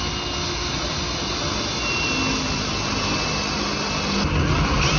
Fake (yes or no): no